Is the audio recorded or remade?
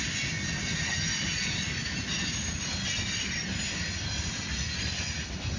recorded